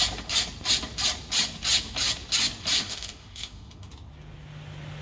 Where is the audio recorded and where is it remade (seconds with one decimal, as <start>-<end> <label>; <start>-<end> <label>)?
0.0-2.8 recorded; 2.8-3.9 remade; 3.9-5.0 recorded